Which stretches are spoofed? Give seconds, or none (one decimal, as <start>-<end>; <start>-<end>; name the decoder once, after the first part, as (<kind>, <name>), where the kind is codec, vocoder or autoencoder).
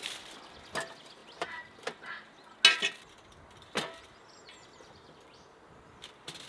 none